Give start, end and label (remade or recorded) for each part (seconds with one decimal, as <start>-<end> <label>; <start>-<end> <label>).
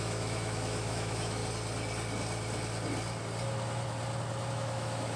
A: 0.0-1.4 remade; 1.4-4.5 recorded; 4.5-5.2 remade